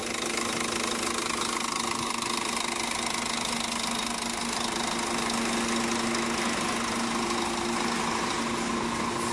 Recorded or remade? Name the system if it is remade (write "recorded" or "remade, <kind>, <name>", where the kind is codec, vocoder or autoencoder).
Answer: recorded